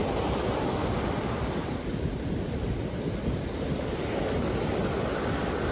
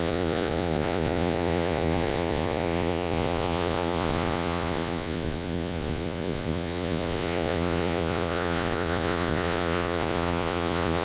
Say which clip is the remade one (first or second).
second